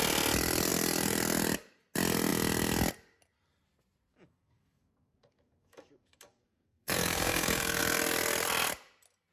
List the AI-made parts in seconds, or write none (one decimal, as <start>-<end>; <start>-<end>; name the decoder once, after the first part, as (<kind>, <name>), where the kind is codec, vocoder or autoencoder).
4.1-7.8 (codec, DAC)